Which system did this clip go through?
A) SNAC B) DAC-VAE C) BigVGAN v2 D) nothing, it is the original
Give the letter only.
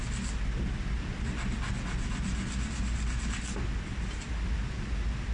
D